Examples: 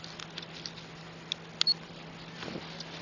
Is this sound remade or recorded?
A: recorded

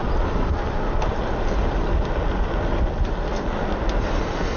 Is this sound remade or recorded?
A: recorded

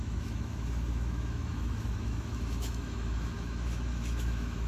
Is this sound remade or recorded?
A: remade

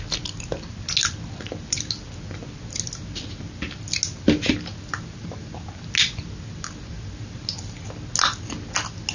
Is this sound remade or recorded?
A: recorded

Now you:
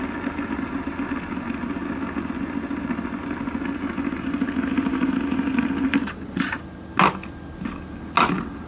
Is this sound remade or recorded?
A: recorded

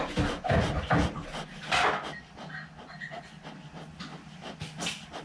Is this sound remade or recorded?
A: recorded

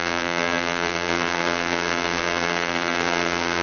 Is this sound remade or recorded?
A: remade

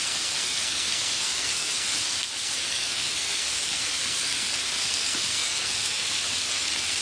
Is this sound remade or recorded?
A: remade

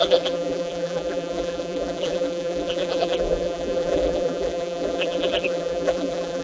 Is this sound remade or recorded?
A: remade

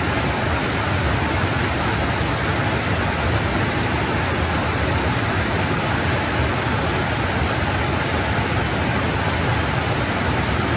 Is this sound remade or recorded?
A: recorded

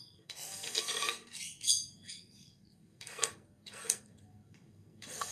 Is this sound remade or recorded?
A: remade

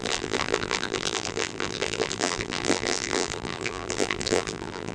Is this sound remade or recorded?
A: remade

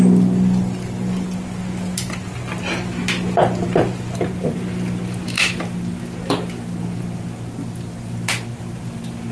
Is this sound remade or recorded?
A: recorded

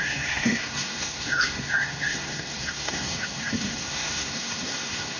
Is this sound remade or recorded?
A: remade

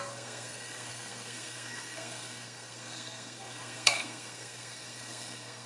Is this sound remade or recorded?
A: remade